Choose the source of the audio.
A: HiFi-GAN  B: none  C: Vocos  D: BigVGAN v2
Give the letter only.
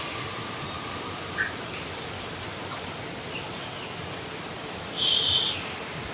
D